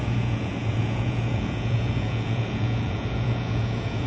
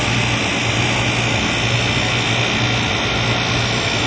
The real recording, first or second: second